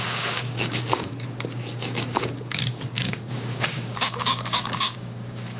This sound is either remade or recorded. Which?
remade